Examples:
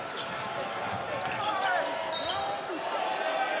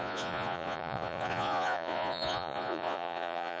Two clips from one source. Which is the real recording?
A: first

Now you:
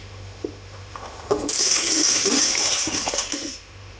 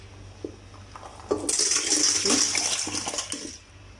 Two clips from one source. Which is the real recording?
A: second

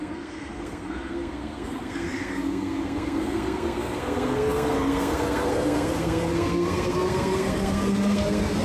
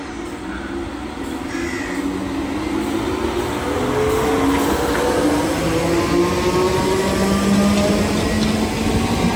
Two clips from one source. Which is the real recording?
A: second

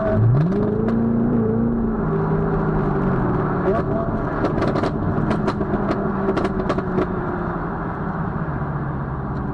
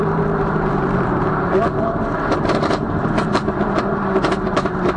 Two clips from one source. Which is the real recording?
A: first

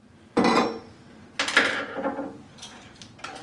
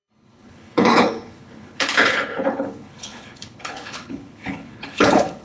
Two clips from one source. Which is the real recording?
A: first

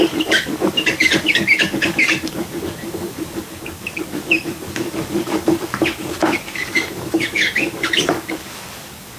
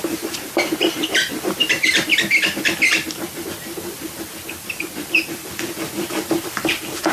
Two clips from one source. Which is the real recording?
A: second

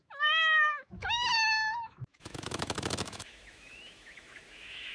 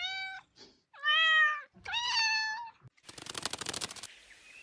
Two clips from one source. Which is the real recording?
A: second